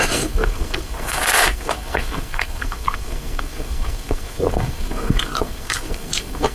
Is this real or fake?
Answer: fake